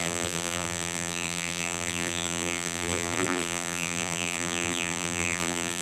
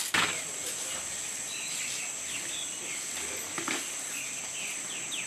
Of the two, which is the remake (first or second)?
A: first